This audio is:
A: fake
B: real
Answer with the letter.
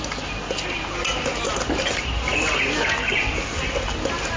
B